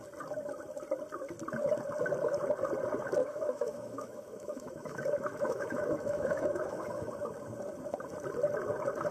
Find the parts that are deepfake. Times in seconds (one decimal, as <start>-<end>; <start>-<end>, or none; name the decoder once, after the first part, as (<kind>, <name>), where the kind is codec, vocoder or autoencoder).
3.2-7.1 (autoencoder, DAC-VAE)

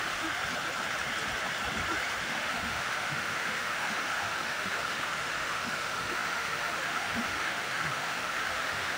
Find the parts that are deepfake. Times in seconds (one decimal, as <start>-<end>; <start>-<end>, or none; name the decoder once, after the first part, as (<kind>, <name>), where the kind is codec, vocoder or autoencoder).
0.0-0.4 (autoencoder, DAC-VAE); 2.2-9.0

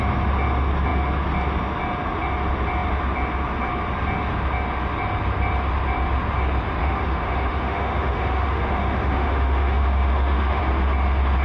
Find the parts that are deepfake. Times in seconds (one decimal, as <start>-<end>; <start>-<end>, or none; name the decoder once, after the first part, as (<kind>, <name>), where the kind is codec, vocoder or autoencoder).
6.8-10.6 (autoencoder, DAC-VAE)

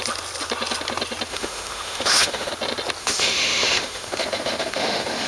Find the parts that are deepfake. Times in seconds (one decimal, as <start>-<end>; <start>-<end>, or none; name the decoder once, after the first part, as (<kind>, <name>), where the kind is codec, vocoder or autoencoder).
1.3-2.5 (autoencoder, DAC-VAE); 3.0-5.3

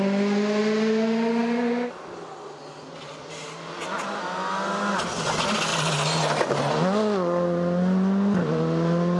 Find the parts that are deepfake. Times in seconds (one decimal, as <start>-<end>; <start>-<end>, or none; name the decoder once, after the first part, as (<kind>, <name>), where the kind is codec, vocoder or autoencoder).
none

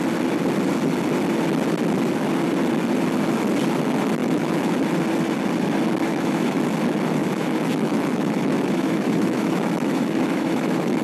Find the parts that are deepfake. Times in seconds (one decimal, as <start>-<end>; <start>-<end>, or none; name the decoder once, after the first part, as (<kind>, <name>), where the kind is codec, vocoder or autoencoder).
4.2-4.8 (autoencoder, DAC-VAE); 6.1-6.6; 7.2-11.0